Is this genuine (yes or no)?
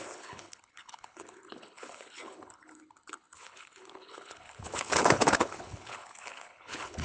no